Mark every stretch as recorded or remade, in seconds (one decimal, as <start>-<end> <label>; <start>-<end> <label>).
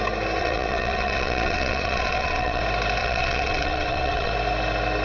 0.0-0.4 recorded; 0.4-2.6 remade; 2.6-3.0 recorded; 3.0-4.3 remade; 4.3-5.0 recorded